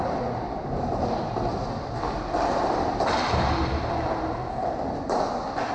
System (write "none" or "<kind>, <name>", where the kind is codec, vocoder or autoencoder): none